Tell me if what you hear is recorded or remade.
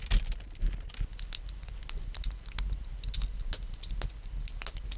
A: recorded